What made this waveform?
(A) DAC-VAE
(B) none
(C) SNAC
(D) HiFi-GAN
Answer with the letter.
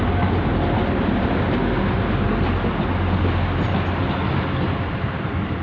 B